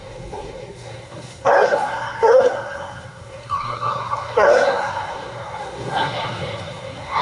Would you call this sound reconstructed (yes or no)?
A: yes